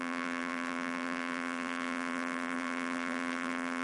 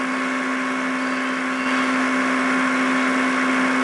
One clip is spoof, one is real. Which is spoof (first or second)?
first